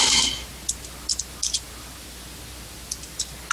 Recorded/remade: recorded